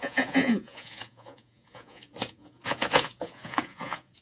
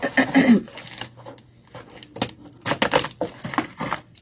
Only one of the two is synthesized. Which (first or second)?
first